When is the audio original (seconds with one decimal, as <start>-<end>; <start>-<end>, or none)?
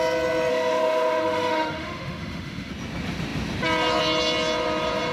0.0-0.5; 2.7-5.1